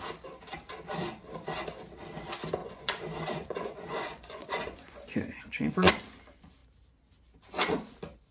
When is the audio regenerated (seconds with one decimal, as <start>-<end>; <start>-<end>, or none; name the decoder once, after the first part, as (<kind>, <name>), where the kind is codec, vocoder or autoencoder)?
2.6-5.9 (vocoder, Vocos)